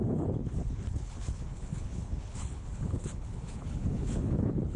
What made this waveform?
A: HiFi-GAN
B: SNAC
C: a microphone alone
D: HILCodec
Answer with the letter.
D